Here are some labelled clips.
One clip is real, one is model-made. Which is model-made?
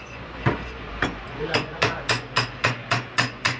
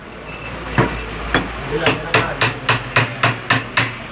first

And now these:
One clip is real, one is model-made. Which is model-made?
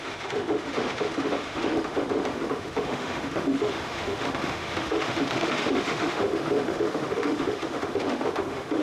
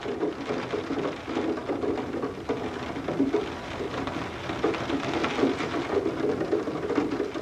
first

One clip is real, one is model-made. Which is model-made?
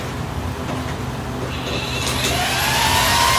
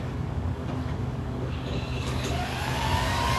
second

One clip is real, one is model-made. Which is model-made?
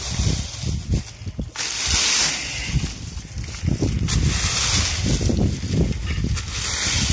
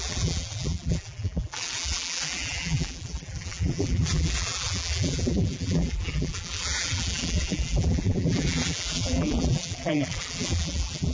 second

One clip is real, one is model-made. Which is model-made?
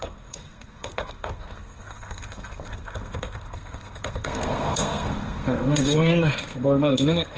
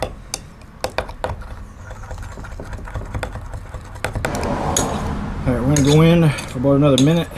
first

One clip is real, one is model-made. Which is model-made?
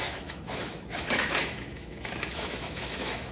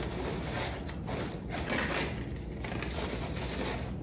first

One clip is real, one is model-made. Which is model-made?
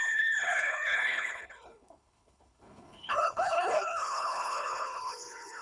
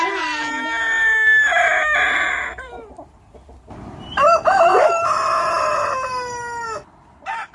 first